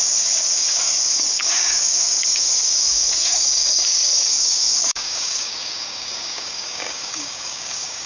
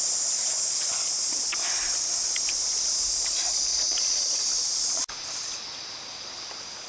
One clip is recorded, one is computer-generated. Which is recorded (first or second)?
second